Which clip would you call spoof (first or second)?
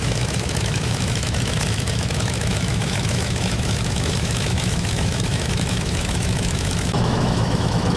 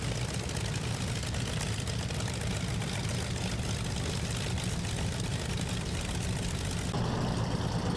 first